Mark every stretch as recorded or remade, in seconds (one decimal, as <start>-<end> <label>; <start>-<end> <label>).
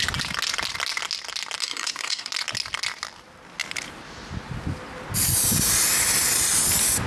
0.0-1.6 recorded; 1.6-2.3 remade; 2.3-7.1 recorded